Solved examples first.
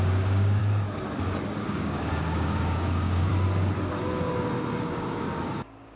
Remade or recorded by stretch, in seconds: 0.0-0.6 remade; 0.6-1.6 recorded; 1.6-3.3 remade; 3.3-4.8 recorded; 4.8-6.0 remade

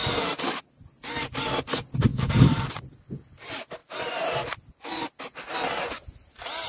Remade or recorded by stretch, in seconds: 0.0-2.1 recorded; 2.1-2.7 remade; 2.7-6.7 recorded

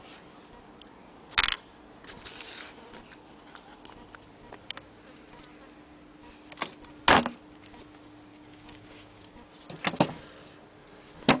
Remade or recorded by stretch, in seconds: 0.0-8.3 recorded; 8.3-9.5 remade; 9.5-11.4 recorded

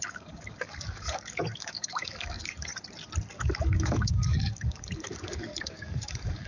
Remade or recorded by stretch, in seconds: 0.0-2.7 remade; 2.7-3.3 recorded; 3.3-6.5 remade

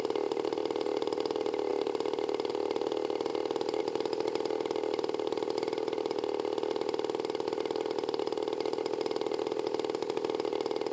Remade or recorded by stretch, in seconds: 0.0-10.9 recorded